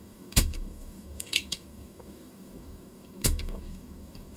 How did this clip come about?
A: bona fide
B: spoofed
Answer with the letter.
B